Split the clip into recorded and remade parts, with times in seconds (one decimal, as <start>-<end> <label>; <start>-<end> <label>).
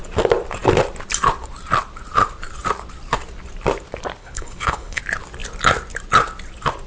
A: 0.0-4.2 recorded; 4.2-5.0 remade; 5.0-6.9 recorded